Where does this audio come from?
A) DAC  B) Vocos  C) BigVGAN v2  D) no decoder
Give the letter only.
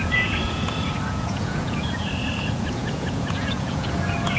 B